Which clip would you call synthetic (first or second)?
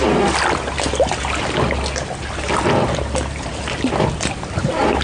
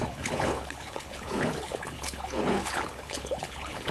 second